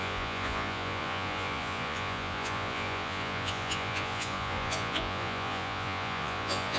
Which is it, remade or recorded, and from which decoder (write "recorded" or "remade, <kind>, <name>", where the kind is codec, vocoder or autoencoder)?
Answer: remade, vocoder, Vocos